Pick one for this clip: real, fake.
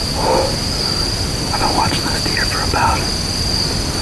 real